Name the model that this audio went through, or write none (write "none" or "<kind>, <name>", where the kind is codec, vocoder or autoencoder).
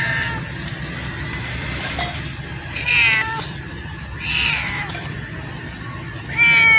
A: none